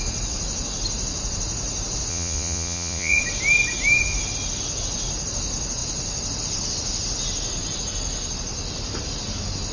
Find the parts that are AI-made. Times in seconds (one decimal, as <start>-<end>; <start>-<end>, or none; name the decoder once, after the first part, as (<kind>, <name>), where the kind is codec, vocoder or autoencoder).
2.1-3.2 (vocoder, Vocos)